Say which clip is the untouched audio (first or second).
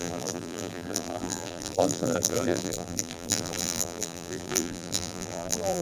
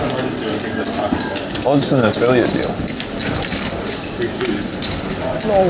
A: second